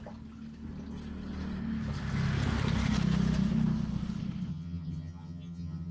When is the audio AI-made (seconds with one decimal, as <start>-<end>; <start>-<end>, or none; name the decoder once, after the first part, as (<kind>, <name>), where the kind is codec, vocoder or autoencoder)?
4.5-5.9 (vocoder, HiFi-GAN)